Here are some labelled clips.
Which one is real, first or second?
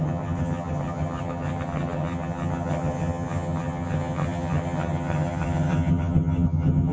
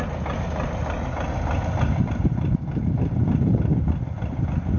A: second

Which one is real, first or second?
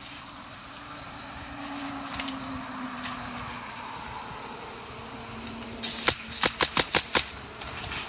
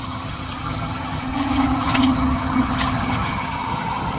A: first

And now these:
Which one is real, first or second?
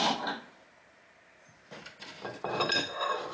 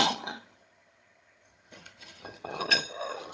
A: first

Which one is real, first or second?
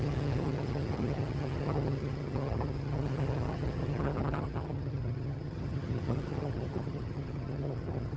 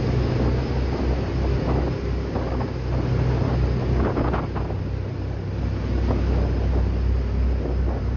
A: second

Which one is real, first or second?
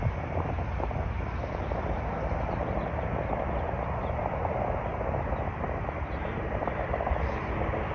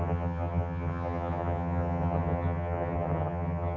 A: first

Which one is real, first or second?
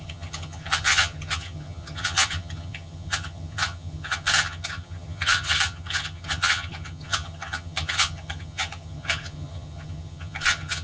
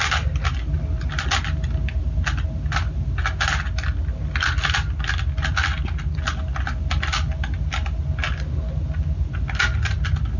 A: second